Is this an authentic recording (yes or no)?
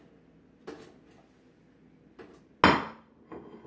yes